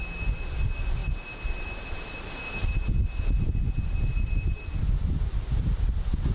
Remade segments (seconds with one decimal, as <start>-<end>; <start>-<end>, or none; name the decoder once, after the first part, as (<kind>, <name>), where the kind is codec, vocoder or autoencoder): none